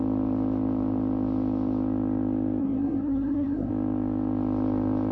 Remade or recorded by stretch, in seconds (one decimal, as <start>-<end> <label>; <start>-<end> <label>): 0.0-2.6 recorded; 2.6-3.7 remade; 3.7-5.1 recorded